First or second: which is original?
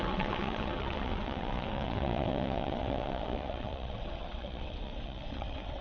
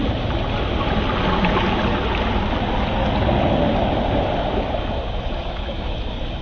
second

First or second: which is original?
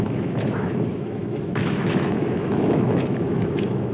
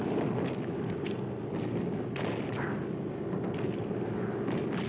second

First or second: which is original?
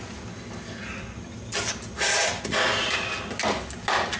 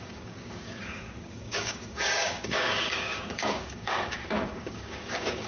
first